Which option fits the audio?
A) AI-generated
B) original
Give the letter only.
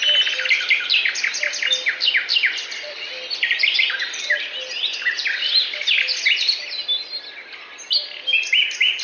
B